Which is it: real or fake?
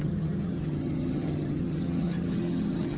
fake